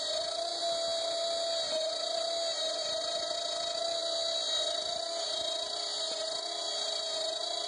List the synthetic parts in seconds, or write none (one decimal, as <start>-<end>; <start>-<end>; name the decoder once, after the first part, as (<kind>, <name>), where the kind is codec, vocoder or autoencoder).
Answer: none